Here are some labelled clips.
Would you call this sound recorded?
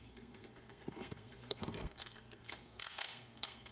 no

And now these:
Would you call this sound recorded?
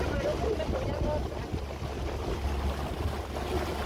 yes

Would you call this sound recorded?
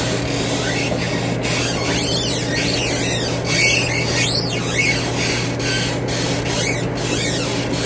yes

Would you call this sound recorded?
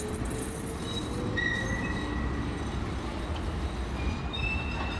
yes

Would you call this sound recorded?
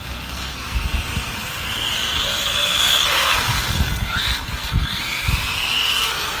no